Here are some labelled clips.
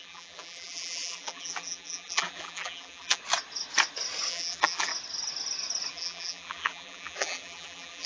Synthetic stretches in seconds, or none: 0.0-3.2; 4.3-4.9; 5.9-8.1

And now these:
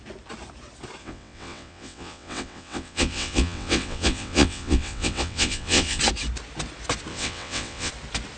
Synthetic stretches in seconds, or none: 1.0-6.0; 7.1-7.9